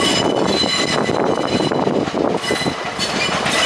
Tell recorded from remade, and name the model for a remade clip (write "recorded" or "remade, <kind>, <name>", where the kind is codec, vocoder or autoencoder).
recorded